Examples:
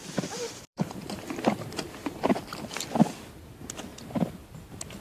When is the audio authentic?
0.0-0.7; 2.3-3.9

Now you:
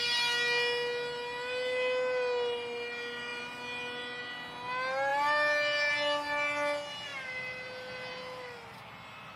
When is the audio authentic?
0.0-9.4

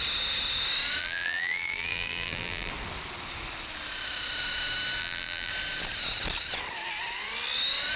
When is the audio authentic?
0.0-1.0; 2.7-5.0; 5.5-8.0

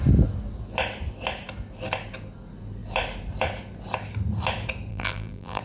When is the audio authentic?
0.0-4.9

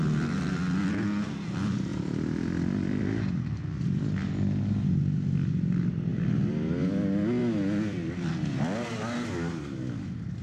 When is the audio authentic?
0.0-10.4

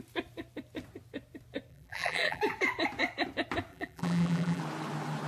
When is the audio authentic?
0.0-1.7; 2.4-3.7; 4.6-5.3

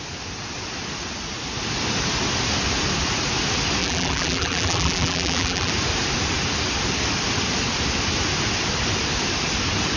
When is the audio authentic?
0.0-3.8; 5.7-10.0